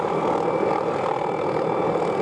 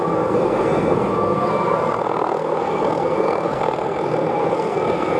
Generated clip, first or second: second